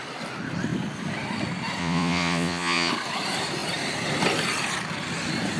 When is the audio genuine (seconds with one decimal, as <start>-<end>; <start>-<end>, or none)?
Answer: 0.0-1.8; 2.9-5.6